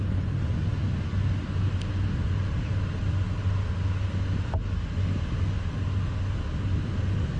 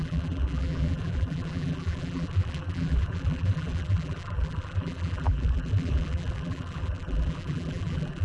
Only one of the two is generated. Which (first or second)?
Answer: second